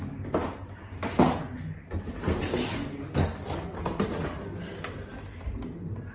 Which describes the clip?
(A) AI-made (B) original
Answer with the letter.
B